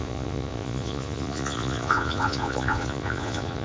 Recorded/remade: remade